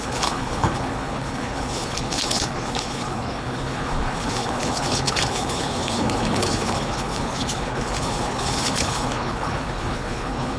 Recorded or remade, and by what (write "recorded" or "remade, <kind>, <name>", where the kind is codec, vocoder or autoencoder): remade, codec, HILCodec